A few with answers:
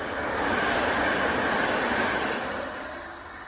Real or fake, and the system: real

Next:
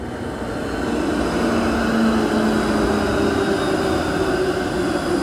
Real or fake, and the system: real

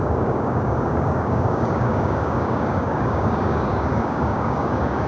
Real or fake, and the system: fake, codec, DAC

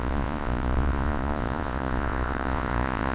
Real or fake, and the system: fake, vocoder, Vocos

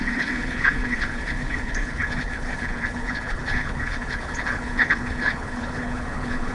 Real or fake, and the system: fake, codec, HILCodec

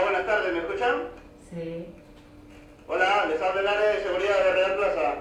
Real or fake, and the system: real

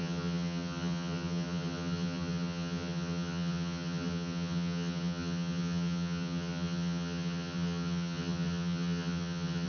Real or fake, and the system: fake, vocoder, HiFi-GAN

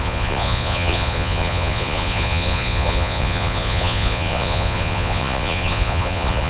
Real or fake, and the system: fake, vocoder, Vocos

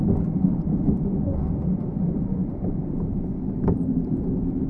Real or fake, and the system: fake, vocoder, BigVGAN v2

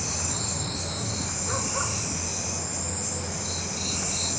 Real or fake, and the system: real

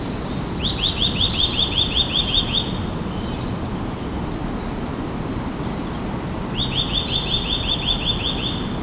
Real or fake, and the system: real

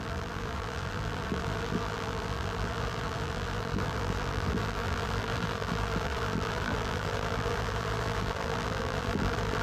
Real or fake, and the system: fake, vocoder, BigVGAN v2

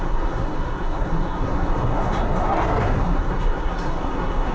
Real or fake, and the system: fake, codec, SNAC